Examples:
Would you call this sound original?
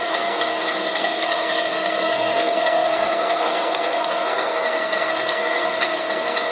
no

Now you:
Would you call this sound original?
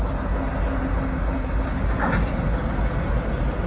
yes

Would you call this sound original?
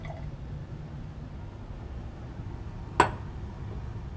yes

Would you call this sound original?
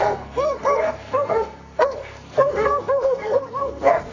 no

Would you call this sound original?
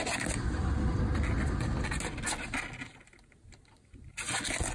yes